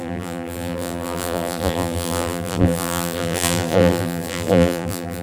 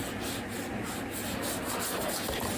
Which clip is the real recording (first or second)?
second